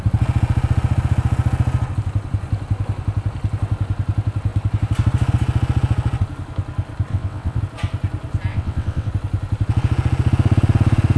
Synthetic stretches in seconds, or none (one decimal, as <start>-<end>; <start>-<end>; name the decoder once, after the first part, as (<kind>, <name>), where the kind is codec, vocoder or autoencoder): 7.1-7.6 (vocoder, WaveNeXt); 8.5-9.1